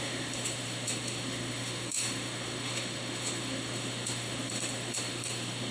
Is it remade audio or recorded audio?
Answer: remade